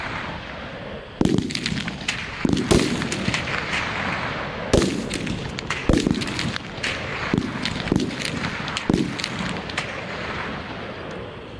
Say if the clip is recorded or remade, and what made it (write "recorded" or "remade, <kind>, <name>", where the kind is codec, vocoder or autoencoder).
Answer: recorded